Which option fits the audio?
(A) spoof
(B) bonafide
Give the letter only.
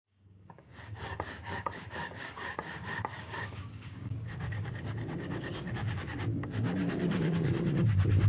A